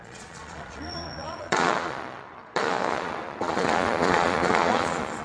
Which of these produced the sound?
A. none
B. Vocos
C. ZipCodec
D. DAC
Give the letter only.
B